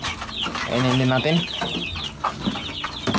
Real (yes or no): yes